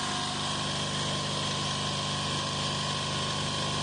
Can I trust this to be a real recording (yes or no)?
yes